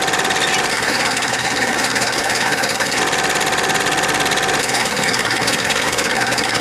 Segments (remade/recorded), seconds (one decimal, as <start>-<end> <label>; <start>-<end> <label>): 0.0-0.7 recorded; 0.7-3.0 remade; 3.0-4.6 recorded; 4.6-6.6 remade